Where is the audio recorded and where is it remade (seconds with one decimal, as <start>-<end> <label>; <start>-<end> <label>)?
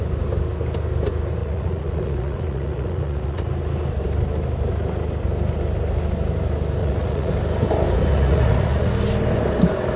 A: 0.0-1.4 recorded; 1.4-3.5 remade; 3.5-6.8 recorded; 6.8-7.3 remade; 7.3-8.0 recorded; 8.0-8.9 remade; 8.9-10.0 recorded